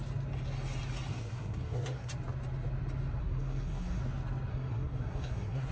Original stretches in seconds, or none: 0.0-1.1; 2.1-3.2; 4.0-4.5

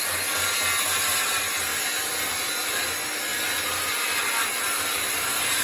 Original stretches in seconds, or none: 0.0-5.6

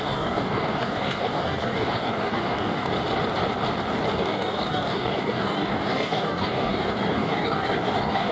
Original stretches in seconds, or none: 2.9-4.2

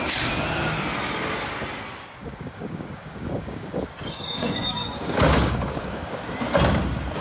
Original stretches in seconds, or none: 0.0-2.2; 6.2-7.2